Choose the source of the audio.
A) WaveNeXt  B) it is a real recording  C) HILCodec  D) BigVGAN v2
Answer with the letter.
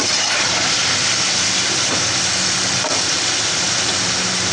B